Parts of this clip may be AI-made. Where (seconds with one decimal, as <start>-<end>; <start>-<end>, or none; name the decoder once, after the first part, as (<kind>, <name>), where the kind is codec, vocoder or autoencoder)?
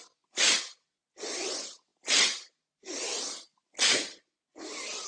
none